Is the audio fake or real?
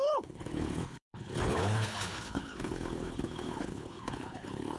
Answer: fake